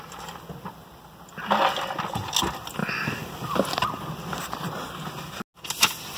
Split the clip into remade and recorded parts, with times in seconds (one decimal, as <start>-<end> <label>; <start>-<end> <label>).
0.0-6.2 recorded